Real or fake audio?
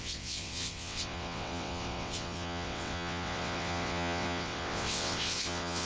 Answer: fake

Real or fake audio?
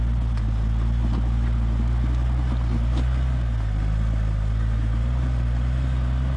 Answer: real